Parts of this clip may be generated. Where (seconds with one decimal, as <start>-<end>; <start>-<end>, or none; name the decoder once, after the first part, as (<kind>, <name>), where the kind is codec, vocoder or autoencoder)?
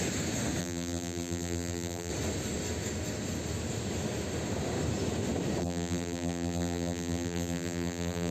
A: 0.6-2.1 (vocoder, BigVGAN v2); 5.6-8.3